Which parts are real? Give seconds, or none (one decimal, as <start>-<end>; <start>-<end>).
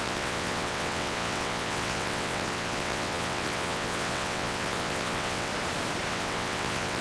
5.5-6.1